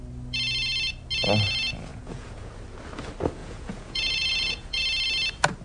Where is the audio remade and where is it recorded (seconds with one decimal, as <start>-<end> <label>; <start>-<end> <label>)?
0.0-1.9 recorded; 1.9-2.5 remade; 2.5-3.4 recorded; 3.4-4.8 remade; 4.8-5.6 recorded